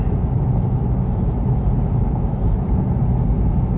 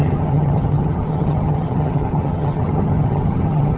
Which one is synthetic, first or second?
second